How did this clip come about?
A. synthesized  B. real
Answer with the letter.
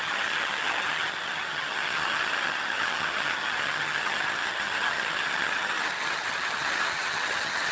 A